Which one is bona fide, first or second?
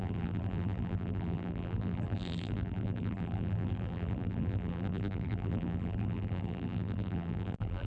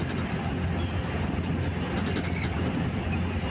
second